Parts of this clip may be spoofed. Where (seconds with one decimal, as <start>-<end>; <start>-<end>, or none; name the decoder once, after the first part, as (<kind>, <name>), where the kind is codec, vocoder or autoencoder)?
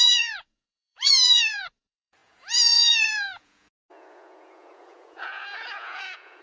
0.0-6.4 (vocoder, Vocos)